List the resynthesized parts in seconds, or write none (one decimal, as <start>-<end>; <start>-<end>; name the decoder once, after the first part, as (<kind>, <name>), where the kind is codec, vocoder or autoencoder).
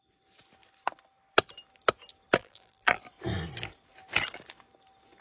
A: 2.4-3.0 (vocoder, BigVGAN v2)